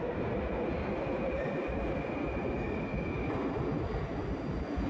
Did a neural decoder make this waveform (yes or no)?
no